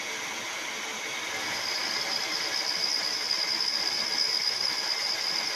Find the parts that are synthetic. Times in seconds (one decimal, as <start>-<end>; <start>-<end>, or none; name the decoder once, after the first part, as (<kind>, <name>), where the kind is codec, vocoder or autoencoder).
none